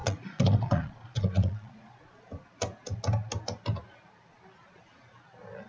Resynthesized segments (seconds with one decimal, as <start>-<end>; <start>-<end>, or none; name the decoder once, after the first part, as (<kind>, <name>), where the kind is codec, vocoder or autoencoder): 0.0-2.0 (vocoder, Vocos)